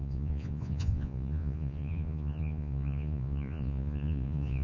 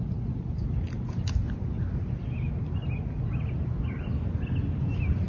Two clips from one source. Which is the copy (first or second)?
first